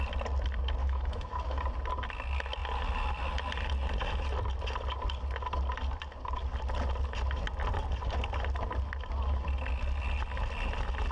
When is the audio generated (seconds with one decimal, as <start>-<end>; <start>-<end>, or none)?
0.8-1.6